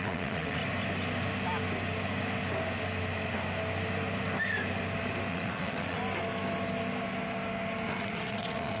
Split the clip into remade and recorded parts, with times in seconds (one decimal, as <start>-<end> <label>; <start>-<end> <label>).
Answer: 0.0-0.6 remade; 0.6-5.3 recorded; 5.3-6.0 remade; 6.0-8.0 recorded; 8.0-8.8 remade